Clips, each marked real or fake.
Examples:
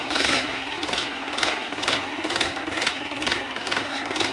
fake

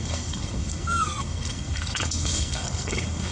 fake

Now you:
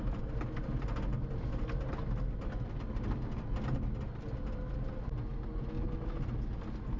real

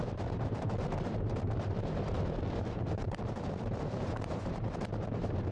fake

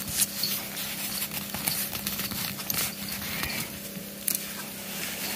real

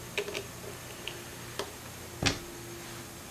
real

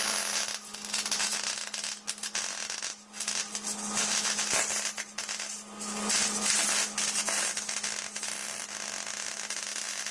real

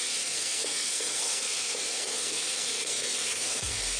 fake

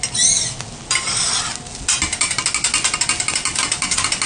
real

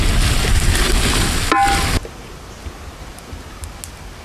real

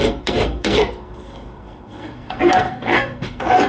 fake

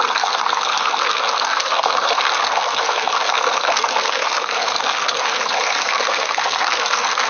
fake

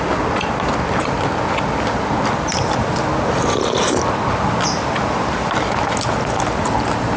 real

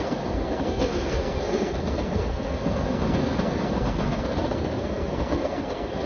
fake